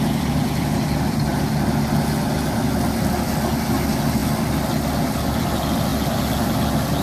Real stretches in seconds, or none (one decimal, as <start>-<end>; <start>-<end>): 0.0-7.0